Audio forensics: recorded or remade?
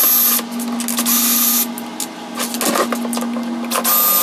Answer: recorded